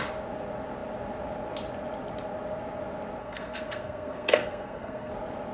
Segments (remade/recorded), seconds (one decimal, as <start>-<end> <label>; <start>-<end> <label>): 0.0-3.2 recorded; 3.2-5.1 remade; 5.1-5.5 recorded